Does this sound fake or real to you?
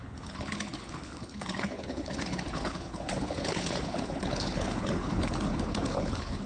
fake